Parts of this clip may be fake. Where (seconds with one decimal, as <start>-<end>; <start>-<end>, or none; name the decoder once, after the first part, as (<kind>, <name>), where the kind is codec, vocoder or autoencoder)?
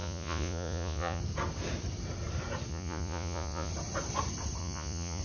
0.0-1.2 (vocoder, Vocos); 2.7-3.7; 4.6-5.2